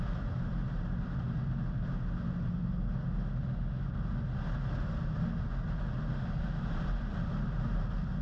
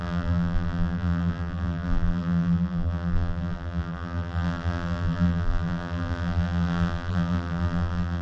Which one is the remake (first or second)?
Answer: second